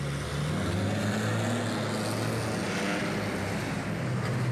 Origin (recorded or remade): recorded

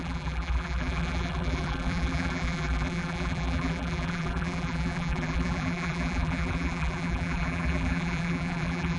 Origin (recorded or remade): remade